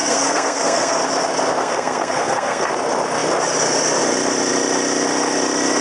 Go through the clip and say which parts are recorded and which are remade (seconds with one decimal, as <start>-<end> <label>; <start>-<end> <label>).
0.0-1.0 remade; 1.0-1.6 recorded; 1.6-2.7 remade; 2.7-5.8 recorded